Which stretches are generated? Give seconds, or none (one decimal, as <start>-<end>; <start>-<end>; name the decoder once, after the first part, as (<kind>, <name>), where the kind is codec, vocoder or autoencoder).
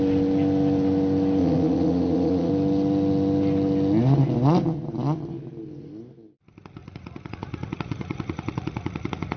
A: 1.4-2.5 (vocoder, Vocos); 6.8-9.4